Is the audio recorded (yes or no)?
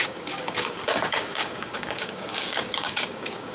no